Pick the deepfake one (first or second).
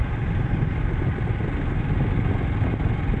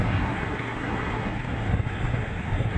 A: second